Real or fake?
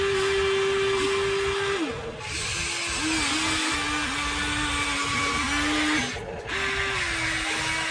real